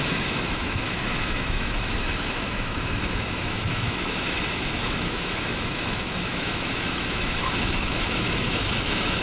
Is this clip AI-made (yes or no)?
yes